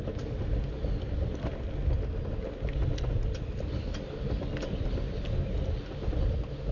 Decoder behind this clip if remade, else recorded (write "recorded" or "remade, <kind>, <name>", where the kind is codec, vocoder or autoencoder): recorded